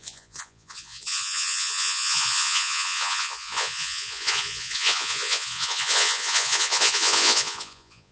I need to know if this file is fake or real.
fake